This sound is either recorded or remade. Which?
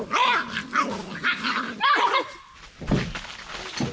recorded